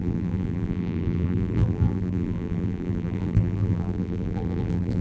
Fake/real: fake